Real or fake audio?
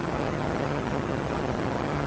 fake